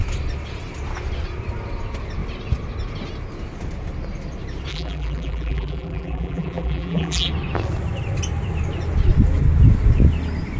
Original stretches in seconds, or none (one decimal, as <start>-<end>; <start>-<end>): 0.0-4.7; 7.3-10.6